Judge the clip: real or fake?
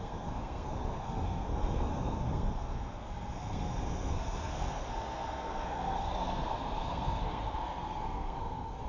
fake